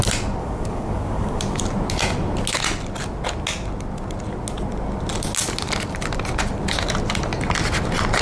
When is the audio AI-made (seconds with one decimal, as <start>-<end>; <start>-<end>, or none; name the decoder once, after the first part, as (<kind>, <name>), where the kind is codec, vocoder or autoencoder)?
0.4-1.6 (codec, DAC)